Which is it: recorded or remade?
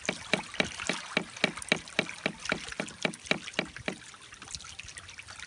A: recorded